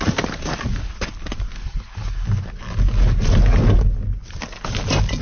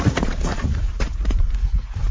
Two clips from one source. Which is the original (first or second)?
first